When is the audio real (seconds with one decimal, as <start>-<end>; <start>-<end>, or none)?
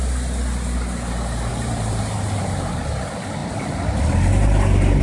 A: 0.0-1.5; 2.7-5.0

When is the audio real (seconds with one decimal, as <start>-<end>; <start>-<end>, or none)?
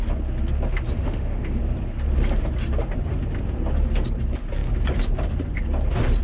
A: 0.0-1.0; 1.6-6.2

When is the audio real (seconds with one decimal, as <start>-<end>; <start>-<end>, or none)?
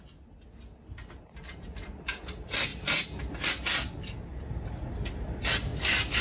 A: 0.0-6.2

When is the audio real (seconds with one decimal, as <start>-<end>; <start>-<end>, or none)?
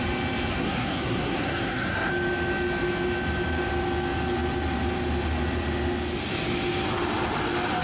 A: 0.0-0.5; 2.1-7.8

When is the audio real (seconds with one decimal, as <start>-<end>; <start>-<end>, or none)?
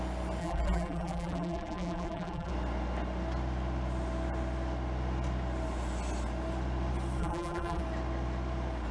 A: 0.0-0.4; 2.5-7.2; 7.8-8.9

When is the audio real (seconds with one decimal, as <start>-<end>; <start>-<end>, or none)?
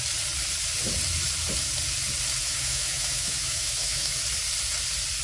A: 0.0-2.4; 4.2-5.2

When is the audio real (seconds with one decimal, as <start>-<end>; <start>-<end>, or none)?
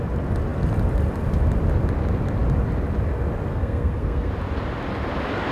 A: 0.0-3.5; 4.3-5.5